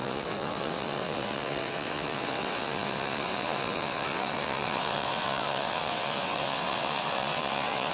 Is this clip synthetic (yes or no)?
yes